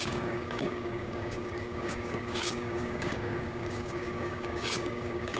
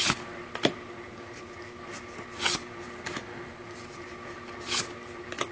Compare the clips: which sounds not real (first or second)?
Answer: first